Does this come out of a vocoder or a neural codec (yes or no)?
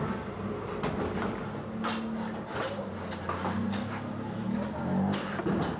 no